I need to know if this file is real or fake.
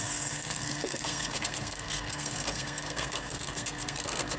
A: fake